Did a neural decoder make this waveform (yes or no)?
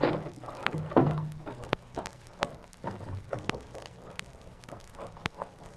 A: yes